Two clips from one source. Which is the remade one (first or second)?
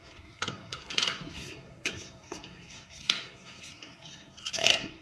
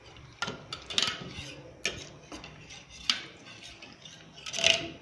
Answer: first